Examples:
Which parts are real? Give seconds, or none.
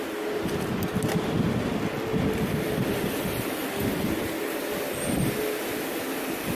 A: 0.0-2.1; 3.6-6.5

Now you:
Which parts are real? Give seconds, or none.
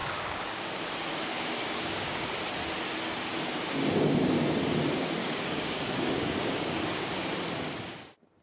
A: 0.9-1.3; 2.3-5.2; 7.1-8.4